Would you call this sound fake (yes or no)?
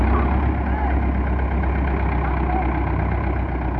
no